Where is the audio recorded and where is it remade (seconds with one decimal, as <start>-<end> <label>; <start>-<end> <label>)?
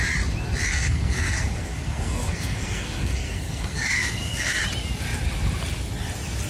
0.0-0.7 recorded; 0.7-4.6 remade; 4.6-6.5 recorded